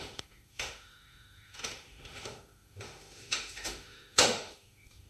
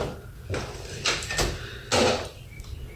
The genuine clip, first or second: second